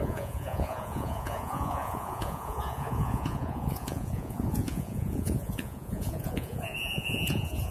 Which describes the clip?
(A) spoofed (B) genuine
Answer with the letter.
A